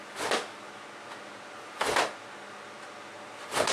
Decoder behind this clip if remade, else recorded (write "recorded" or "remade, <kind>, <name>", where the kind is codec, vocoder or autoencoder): recorded